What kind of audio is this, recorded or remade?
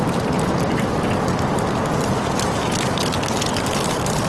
recorded